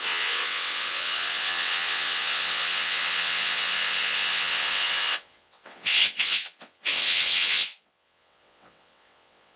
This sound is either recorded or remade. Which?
remade